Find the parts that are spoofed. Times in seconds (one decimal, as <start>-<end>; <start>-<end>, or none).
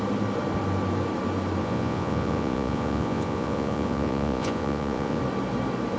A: 1.6-5.2